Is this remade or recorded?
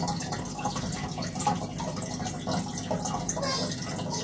recorded